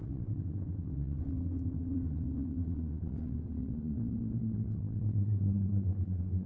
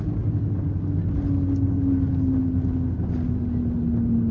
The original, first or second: second